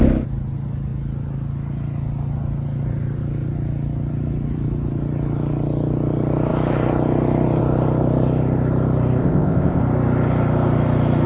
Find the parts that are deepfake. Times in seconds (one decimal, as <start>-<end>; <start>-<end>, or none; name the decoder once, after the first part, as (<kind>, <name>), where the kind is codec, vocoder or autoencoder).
9.2-9.8 (codec, ZipCodec)